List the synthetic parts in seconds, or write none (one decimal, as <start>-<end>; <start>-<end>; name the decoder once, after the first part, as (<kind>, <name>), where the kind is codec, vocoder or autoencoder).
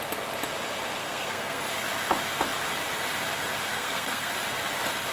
1.0-1.6 (codec, SNAC); 3.7-4.3